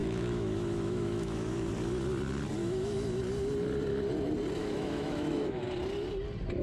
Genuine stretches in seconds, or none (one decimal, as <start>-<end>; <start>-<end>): 1.7-2.6; 3.2-4.6; 5.6-6.6